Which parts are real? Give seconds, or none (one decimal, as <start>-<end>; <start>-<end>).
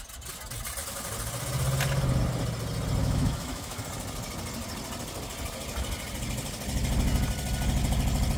0.0-3.0; 3.8-8.4